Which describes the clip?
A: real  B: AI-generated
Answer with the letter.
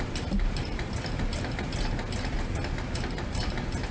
A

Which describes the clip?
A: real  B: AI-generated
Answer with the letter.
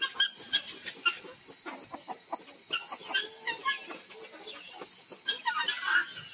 A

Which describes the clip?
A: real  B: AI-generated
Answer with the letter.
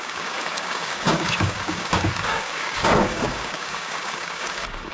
B